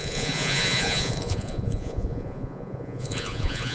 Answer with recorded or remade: remade